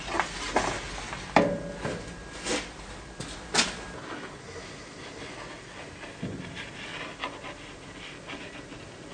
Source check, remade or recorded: recorded